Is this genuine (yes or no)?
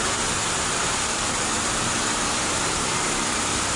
no